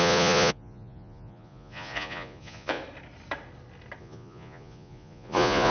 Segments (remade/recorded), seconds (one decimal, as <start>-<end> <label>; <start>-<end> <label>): 0.0-2.8 remade; 2.8-4.0 recorded; 4.0-5.7 remade